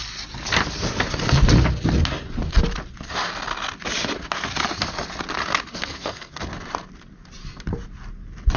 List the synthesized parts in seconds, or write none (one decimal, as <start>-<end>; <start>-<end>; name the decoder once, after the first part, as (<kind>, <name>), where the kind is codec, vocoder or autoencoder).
5.7-6.4 (codec, SNAC)